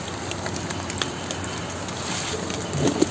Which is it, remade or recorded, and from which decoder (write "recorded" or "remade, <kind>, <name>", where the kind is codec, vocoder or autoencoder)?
recorded